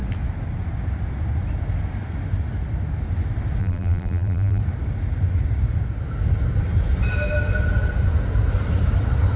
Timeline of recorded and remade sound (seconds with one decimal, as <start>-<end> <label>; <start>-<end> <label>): 0.0-3.6 recorded; 3.6-4.6 remade; 4.6-9.4 recorded